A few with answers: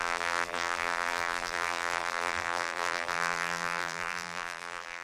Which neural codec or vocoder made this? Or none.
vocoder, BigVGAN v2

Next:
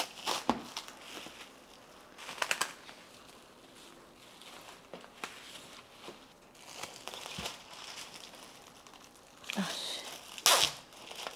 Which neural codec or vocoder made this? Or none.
none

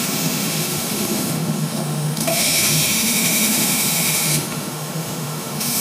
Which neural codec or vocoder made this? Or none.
autoencoder, DAC-VAE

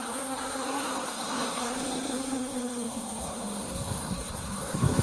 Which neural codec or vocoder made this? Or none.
codec, SNAC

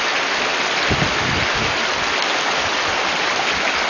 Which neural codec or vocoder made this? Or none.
none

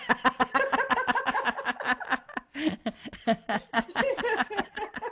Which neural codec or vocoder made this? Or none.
none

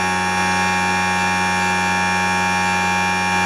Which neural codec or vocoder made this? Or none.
none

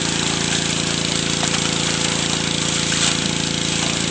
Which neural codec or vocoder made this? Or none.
none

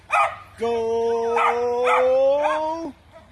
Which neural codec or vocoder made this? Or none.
none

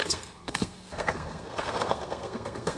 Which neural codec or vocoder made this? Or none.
codec, SNAC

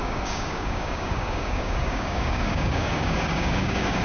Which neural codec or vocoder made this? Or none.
codec, DAC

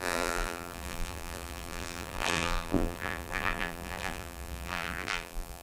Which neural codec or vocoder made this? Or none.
vocoder, BigVGAN v2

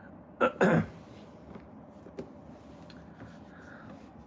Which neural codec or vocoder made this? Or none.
none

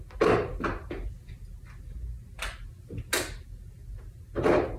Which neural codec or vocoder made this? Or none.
none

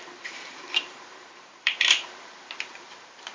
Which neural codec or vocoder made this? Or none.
vocoder, BigVGAN v2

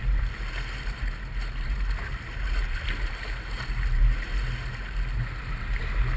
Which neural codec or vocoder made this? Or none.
none